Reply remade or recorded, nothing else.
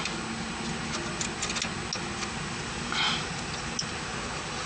recorded